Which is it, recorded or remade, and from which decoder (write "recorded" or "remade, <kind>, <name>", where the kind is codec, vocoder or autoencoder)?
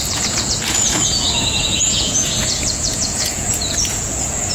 remade, vocoder, Vocos